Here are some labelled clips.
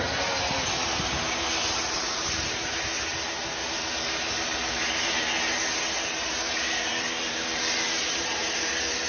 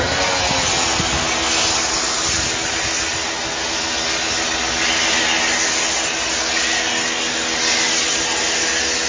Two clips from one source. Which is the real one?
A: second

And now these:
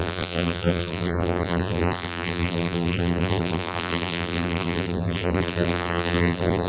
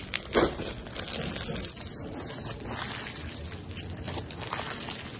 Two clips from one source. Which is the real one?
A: second